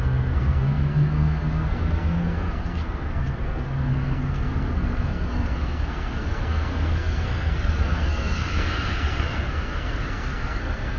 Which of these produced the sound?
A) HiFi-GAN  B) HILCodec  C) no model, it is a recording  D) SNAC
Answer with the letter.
D